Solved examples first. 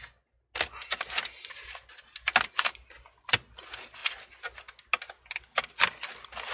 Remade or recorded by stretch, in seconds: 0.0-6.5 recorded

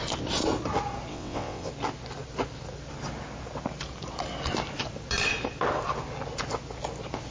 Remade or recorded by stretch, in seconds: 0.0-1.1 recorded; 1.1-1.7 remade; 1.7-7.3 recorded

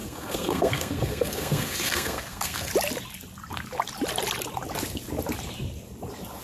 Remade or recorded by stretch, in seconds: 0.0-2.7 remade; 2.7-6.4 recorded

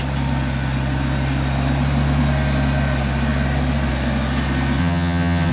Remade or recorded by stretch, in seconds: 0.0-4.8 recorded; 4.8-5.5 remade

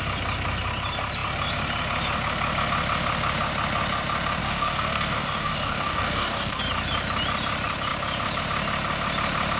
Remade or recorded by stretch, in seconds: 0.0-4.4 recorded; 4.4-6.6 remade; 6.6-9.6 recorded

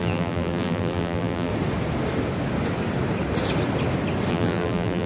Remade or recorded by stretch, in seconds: 0.0-1.5 remade; 1.5-4.3 recorded; 4.3-5.1 remade

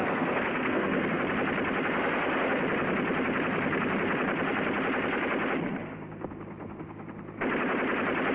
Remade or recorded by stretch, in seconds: 0.0-1.2 remade; 1.2-8.3 recorded

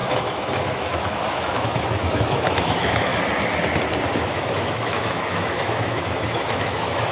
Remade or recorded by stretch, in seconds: 0.0-3.1 remade; 3.1-4.2 recorded; 4.2-7.1 remade